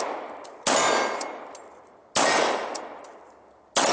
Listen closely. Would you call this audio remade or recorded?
recorded